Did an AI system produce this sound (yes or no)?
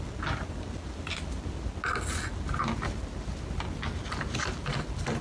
no